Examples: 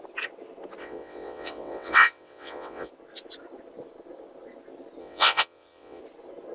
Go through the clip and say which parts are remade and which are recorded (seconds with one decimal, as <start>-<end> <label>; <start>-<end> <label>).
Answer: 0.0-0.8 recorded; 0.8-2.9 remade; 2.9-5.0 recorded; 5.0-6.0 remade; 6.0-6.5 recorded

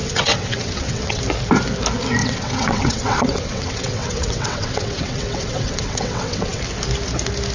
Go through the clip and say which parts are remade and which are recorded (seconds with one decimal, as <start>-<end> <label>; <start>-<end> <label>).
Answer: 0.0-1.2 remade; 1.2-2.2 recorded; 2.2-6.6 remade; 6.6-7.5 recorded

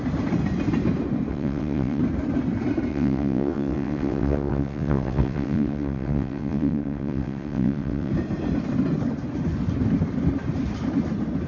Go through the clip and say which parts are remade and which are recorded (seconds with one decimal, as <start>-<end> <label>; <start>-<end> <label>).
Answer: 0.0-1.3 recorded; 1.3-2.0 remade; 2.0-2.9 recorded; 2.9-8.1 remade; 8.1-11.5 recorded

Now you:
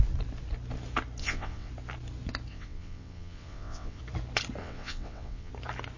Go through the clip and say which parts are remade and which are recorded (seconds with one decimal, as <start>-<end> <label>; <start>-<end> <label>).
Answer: 0.0-1.2 recorded; 1.2-1.7 remade; 1.7-2.5 recorded; 2.5-4.0 remade; 4.0-4.6 recorded; 4.6-5.5 remade; 5.5-6.0 recorded

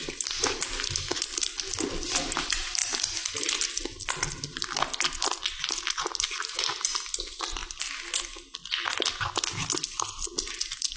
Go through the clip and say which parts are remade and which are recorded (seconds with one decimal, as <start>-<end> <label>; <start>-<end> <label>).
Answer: 0.0-11.0 recorded

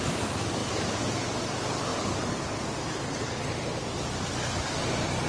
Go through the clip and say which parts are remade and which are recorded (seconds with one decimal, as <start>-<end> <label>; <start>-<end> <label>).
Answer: 0.0-5.3 recorded